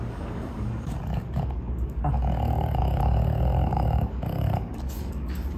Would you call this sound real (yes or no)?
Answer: no